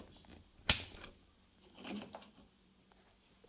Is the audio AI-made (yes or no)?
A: no